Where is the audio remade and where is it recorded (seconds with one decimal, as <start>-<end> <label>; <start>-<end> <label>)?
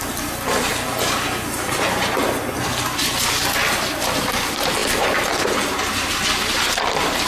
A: 0.0-7.3 recorded